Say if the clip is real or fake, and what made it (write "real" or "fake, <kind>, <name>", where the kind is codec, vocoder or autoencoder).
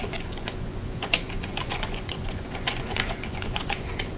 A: fake, vocoder, Vocos